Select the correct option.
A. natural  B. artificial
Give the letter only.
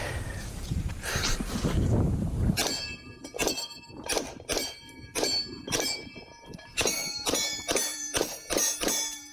B